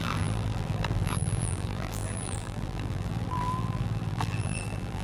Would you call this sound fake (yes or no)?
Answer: yes